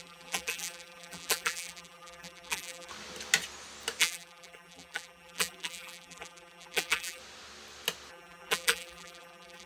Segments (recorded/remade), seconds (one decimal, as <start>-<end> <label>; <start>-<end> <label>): 0.0-2.9 remade; 2.9-4.0 recorded; 4.0-7.2 remade; 7.2-8.1 recorded; 8.1-9.7 remade